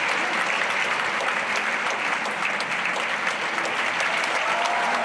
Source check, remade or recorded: recorded